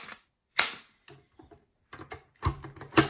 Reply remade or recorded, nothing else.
recorded